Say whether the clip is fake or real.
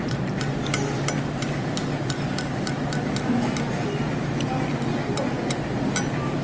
real